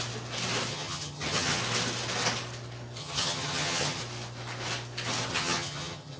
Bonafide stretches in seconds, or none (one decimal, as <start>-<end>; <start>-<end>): 0.0-0.7; 1.6-3.0; 4.0-5.3